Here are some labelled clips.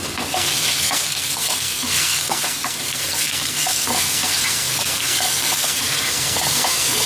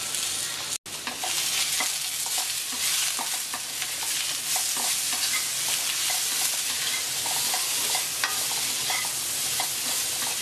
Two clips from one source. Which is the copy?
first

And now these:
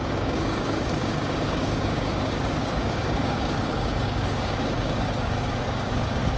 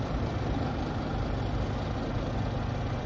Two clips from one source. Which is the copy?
first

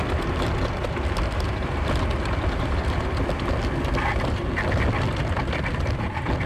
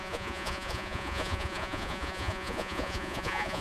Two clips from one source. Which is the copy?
second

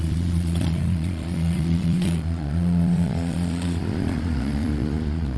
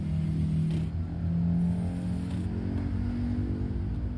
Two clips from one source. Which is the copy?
first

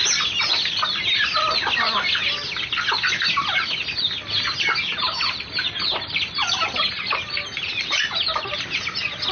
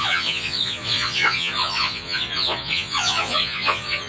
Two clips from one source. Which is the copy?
second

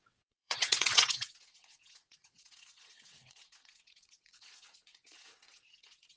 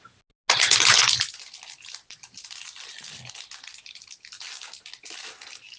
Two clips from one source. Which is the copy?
first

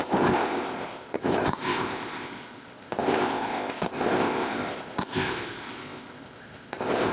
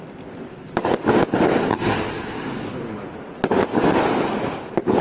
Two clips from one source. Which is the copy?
first